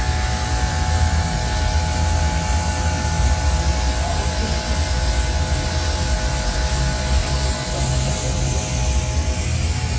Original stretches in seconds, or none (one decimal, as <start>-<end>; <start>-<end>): 0.0-10.0